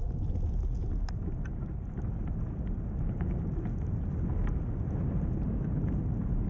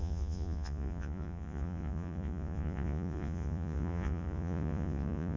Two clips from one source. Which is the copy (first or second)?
second